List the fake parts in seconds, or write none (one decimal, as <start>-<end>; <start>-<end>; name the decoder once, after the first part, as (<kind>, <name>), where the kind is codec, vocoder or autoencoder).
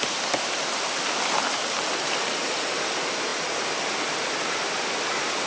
none